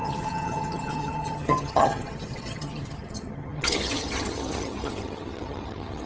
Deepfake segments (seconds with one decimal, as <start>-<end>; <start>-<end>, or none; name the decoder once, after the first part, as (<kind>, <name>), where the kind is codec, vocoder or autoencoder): 0.0-6.1 (vocoder, HiFi-GAN)